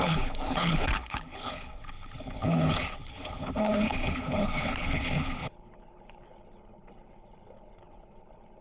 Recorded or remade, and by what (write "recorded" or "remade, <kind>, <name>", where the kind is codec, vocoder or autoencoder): remade, codec, HILCodec